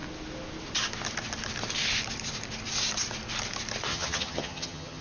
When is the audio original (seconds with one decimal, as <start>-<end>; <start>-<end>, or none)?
0.0-3.9